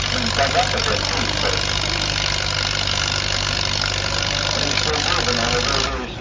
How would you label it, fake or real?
real